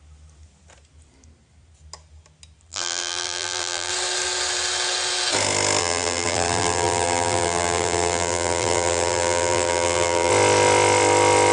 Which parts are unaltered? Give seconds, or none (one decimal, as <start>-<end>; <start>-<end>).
0.0-2.7; 3.9-5.8; 10.3-11.5

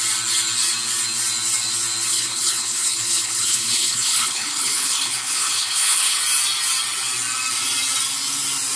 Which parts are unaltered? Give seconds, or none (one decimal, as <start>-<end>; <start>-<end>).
0.0-2.1; 6.2-8.8

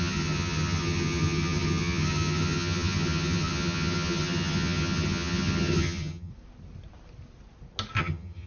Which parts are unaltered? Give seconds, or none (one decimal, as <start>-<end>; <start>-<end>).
6.3-8.0

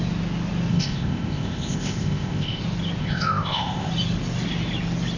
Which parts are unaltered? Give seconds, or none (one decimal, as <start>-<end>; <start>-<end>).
0.0-0.7; 2.6-3.0; 3.9-5.2

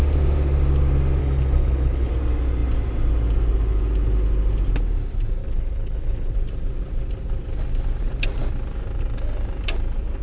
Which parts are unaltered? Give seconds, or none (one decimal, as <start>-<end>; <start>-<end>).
0.0-1.2; 2.1-5.4; 6.3-10.2

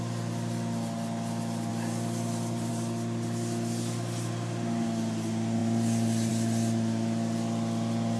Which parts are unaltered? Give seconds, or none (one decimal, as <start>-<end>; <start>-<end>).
0.0-1.7; 2.7-5.6; 6.3-8.2